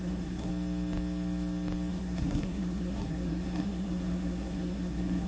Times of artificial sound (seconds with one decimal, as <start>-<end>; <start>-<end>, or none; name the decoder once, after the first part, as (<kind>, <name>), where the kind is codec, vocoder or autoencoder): 0.0-0.5 (codec, SNAC); 1.9-5.3